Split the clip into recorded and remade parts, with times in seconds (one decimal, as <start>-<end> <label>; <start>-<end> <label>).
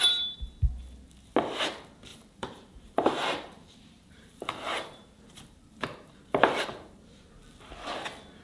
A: 0.0-2.1 recorded; 2.1-7.0 remade; 7.0-8.4 recorded